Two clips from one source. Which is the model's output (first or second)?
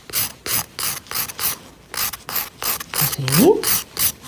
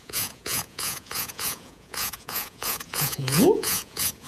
second